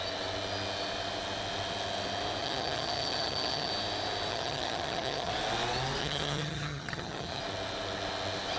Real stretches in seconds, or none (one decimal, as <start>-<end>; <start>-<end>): 0.0-2.4; 3.7-4.3; 5.3-6.0; 7.4-8.6